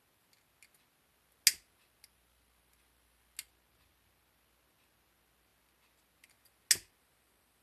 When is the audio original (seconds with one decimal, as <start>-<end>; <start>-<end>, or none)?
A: 0.0-7.6